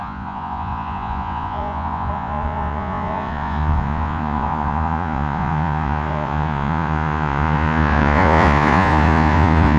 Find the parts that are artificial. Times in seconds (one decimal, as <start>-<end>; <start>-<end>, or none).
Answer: 0.0-9.8